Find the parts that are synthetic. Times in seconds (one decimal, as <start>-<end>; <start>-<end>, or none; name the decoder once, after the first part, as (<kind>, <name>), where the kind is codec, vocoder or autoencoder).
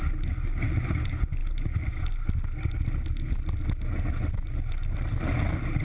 none